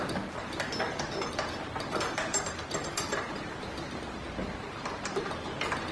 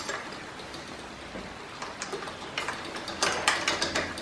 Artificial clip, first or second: first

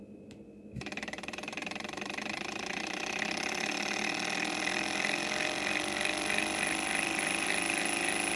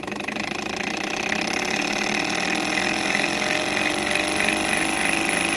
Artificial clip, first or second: first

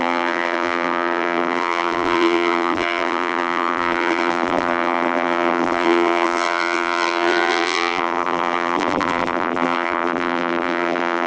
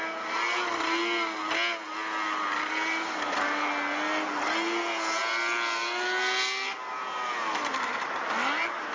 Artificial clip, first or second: first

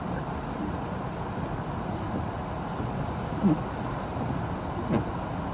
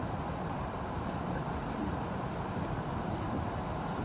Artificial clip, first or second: second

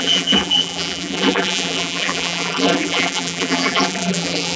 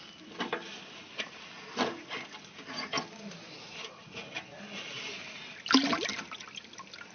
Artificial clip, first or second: first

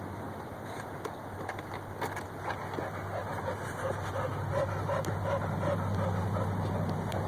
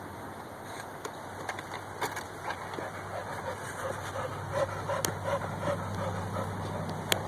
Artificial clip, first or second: second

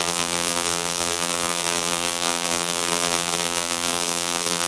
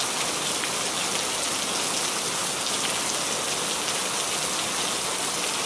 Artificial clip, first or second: first